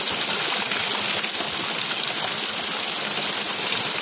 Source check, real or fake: real